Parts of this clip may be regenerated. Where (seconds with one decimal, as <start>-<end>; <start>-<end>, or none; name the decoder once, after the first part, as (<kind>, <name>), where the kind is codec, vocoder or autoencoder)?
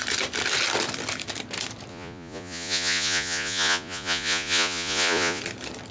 1.9-5.4 (vocoder, Vocos)